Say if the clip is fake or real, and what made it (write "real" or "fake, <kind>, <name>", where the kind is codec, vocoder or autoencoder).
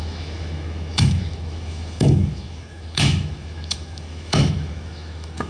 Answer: fake, autoencoder, DAC-VAE